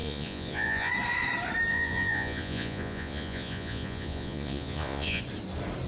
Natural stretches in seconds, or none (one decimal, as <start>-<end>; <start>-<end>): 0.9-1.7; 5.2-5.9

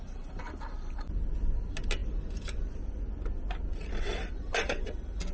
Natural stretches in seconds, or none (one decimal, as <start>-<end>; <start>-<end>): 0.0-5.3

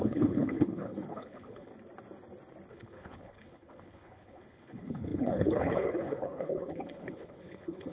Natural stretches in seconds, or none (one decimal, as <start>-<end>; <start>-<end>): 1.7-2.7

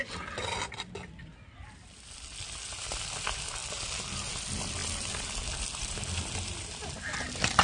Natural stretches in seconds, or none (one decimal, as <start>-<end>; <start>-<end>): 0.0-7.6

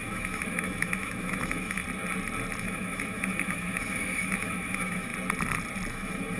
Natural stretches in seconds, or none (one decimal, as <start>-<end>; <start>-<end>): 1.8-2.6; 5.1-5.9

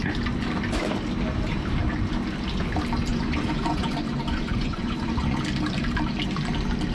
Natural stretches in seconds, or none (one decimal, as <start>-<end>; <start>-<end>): 0.0-3.1; 5.4-6.9